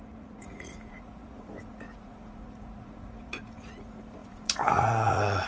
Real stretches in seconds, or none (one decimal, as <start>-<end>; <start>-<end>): none